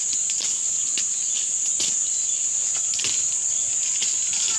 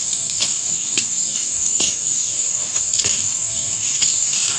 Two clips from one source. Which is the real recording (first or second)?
first